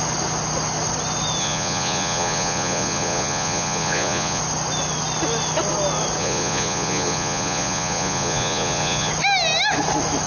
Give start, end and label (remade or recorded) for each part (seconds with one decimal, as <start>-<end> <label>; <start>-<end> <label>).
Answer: 0.0-1.4 recorded; 1.4-4.4 remade; 4.4-6.2 recorded; 6.2-9.1 remade; 9.1-10.3 recorded